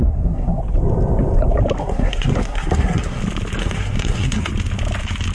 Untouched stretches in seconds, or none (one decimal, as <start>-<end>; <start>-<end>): 0.6-1.8; 3.2-3.6; 4.5-5.3